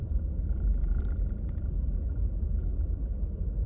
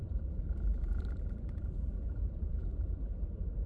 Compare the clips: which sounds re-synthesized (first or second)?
second